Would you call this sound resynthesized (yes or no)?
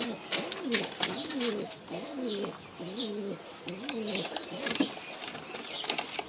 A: no